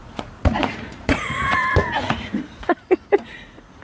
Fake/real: fake